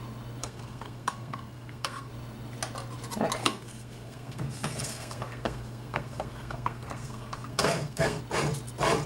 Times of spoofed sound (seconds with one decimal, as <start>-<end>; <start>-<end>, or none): 0.4-2.1; 3.4-8.2